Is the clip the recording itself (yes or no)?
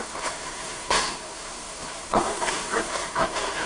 no